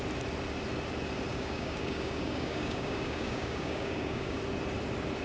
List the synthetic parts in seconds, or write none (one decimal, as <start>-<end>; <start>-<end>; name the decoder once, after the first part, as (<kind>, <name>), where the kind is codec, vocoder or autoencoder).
1.3-4.4 (codec, DAC)